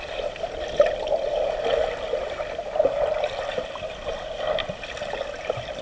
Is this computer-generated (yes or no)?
no